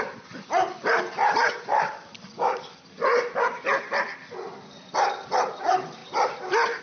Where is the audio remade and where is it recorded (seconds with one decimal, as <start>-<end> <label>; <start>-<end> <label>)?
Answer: 0.0-6.8 recorded